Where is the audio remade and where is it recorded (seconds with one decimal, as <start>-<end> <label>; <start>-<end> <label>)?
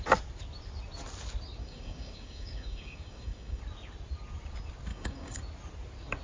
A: 0.0-1.6 recorded; 1.6-3.6 remade; 3.6-4.9 recorded; 4.9-5.4 remade; 5.4-6.2 recorded